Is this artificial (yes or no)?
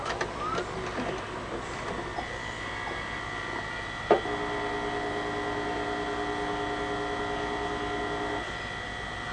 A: no